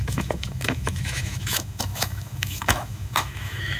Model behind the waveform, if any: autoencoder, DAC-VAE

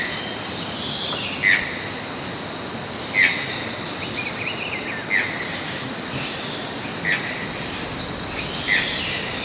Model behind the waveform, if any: none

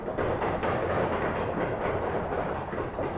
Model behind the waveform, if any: none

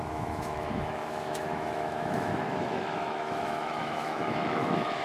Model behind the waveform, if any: autoencoder, DAC-VAE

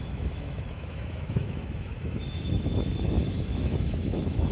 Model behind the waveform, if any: autoencoder, DAC-VAE